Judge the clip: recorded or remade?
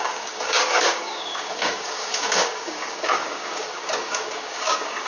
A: remade